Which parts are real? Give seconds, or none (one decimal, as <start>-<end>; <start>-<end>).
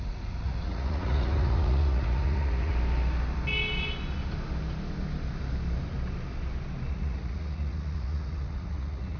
2.7-6.9